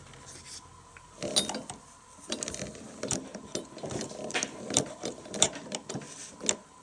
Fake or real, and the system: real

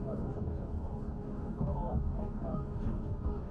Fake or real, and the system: fake, codec, DAC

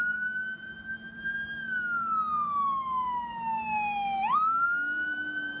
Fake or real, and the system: real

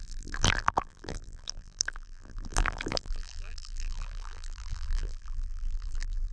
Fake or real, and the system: fake, vocoder, BigVGAN v2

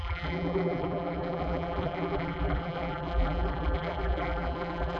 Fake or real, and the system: fake, vocoder, BigVGAN v2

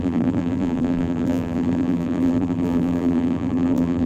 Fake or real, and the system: fake, vocoder, BigVGAN v2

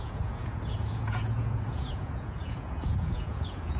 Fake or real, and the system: fake, vocoder, Vocos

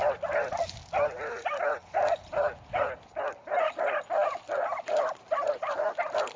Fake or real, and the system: real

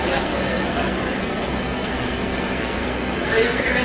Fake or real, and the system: fake, codec, SNAC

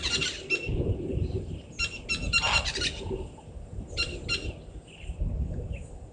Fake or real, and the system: real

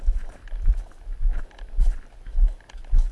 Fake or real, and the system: real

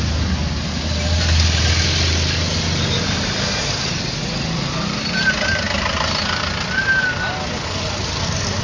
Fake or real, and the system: real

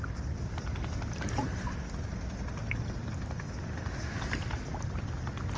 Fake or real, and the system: real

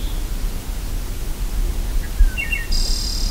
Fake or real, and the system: real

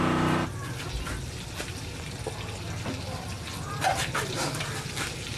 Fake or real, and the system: real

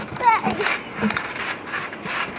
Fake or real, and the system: real